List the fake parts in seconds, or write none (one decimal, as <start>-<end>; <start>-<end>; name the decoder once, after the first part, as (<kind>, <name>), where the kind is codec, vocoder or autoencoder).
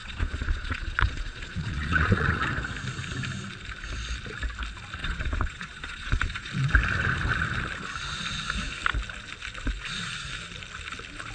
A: 0.0-2.5 (vocoder, Vocos); 5.0-6.5